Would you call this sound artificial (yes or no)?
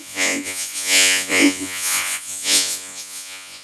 yes